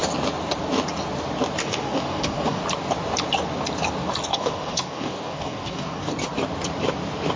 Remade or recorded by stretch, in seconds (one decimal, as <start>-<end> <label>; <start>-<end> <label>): 0.0-1.6 recorded; 1.6-2.6 remade; 2.6-4.3 recorded; 4.3-6.1 remade; 6.1-7.4 recorded